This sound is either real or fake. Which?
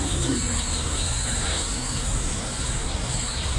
fake